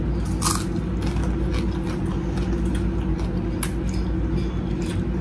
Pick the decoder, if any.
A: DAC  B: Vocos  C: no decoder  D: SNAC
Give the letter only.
C